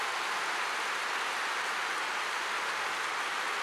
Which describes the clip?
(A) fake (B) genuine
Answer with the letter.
B